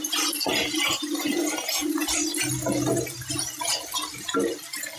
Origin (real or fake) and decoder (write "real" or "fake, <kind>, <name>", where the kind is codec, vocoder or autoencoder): real